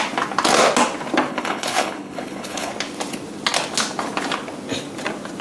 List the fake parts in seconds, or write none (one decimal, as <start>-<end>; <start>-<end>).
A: 1.3-2.7